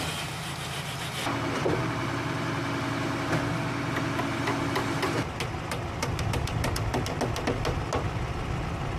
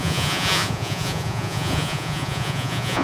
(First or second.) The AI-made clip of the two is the second